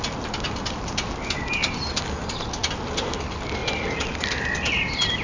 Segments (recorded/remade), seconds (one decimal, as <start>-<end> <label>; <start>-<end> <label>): 0.0-5.2 recorded